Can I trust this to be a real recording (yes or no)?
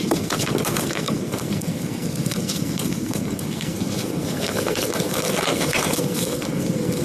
no